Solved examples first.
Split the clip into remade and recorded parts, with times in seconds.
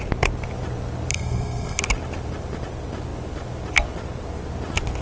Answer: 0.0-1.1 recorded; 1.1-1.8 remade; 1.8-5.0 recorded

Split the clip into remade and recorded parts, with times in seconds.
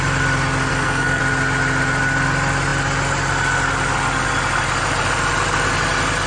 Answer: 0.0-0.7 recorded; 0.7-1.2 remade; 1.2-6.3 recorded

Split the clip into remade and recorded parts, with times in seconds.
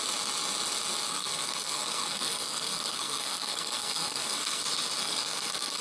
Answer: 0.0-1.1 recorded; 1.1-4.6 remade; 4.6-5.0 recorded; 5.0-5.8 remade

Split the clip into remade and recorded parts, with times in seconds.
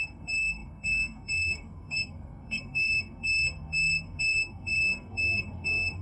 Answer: 0.0-6.0 remade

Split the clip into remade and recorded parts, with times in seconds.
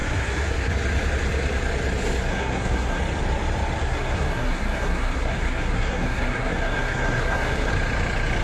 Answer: 0.0-0.7 remade; 0.7-2.3 recorded; 2.3-3.0 remade; 3.0-3.8 recorded; 3.8-7.7 remade; 7.7-8.4 recorded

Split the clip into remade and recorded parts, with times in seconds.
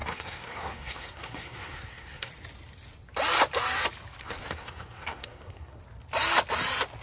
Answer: 0.0-2.3 remade; 2.3-4.2 recorded; 4.2-5.8 remade; 5.8-7.0 recorded